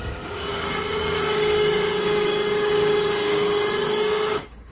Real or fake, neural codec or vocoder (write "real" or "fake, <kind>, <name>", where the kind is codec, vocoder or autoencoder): fake, codec, DAC